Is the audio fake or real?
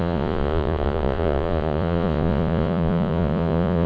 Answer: fake